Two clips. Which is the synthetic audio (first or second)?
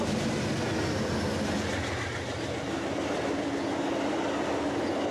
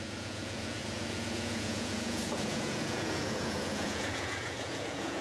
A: second